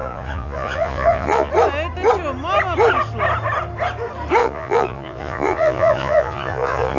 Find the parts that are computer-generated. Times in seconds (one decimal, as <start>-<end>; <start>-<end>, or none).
0.0-1.5; 4.4-7.0